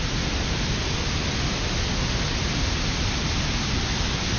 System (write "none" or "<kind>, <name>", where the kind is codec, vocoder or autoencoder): none